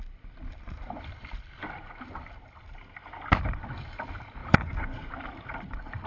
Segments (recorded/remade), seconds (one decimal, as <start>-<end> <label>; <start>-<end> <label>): 0.0-1.6 remade; 1.6-3.1 recorded; 3.1-4.4 remade; 4.4-5.2 recorded; 5.2-6.1 remade